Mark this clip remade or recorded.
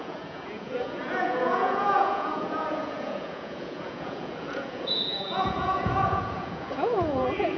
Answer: remade